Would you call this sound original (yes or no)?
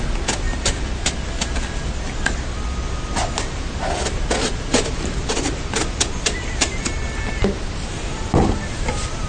yes